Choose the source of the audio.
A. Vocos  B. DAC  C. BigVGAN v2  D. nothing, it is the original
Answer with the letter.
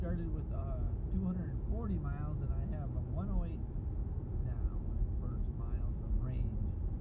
D